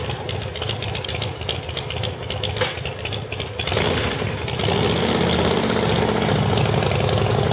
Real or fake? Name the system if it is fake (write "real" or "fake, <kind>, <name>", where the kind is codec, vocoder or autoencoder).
real